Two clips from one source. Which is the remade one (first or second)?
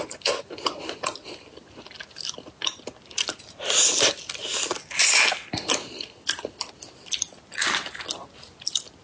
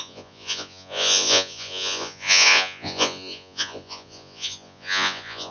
second